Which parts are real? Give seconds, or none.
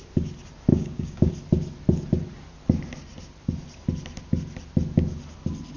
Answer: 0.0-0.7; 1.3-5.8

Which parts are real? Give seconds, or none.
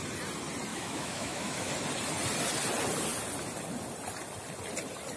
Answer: 0.0-0.7; 1.7-5.2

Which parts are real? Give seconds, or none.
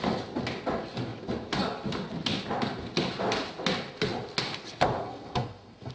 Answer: 0.0-5.0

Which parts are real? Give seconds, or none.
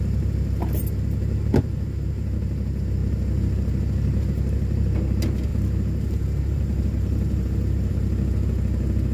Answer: 0.0-5.5; 7.9-9.1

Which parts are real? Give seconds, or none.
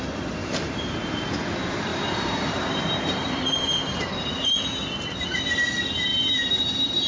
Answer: 0.0-0.4; 1.4-1.9; 4.3-6.1; 6.6-7.1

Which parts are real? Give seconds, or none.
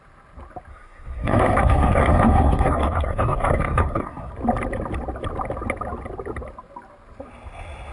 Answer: 0.0-0.7; 4.3-7.9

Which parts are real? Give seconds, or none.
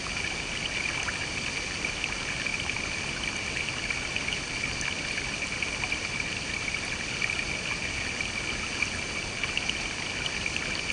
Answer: 0.0-10.9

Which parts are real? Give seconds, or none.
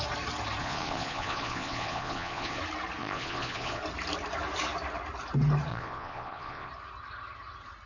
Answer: 0.0-0.6; 2.6-3.0; 3.8-5.7; 6.7-7.9